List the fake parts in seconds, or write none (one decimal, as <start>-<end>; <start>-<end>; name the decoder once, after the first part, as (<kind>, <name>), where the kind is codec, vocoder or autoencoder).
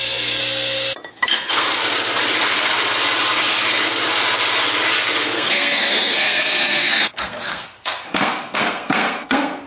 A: 0.0-0.4 (codec, SNAC); 1.1-1.8; 5.2-9.7